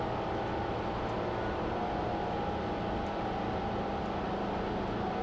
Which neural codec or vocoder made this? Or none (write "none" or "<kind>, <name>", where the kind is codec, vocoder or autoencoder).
none